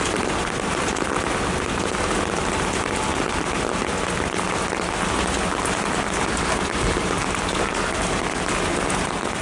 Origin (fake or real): real